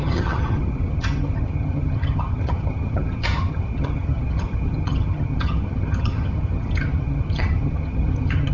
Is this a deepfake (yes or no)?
yes